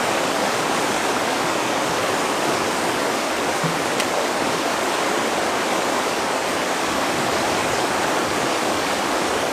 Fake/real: fake